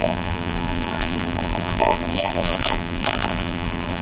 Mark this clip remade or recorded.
remade